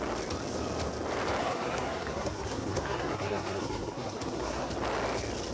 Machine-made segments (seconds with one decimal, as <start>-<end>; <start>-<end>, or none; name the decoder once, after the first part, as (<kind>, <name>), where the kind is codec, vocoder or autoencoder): 1.4-4.7 (codec, SNAC)